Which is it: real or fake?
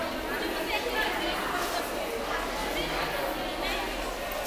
real